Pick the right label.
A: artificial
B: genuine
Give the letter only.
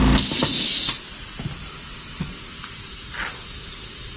B